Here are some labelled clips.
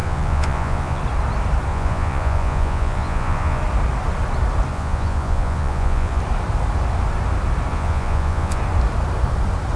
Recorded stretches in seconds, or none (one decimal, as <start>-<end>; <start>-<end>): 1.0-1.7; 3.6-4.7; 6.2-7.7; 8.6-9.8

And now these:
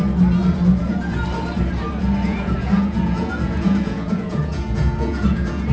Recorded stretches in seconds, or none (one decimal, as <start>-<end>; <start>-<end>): 0.0-0.4; 1.2-2.3

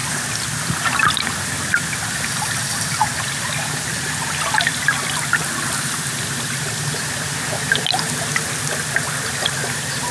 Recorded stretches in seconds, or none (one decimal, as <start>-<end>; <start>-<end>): 0.0-10.1

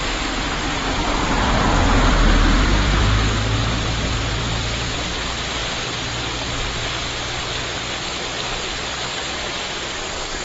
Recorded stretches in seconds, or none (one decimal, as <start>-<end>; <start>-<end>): 3.6-4.3; 5.6-9.2